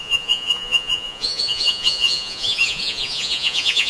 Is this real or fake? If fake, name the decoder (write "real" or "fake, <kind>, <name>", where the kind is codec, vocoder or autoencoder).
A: fake, vocoder, Vocos